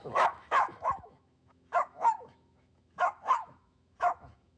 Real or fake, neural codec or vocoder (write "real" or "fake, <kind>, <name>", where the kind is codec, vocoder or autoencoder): fake, autoencoder, DAC-VAE